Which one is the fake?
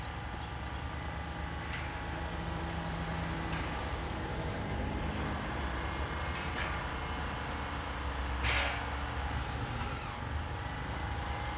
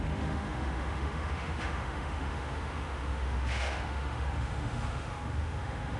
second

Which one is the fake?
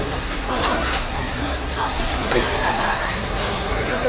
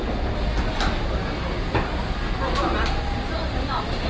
first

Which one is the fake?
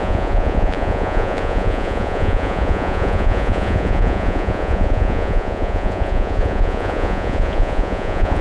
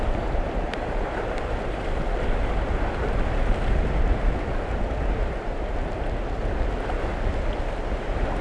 first